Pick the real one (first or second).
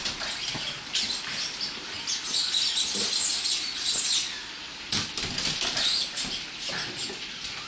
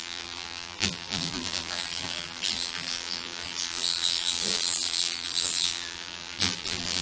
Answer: first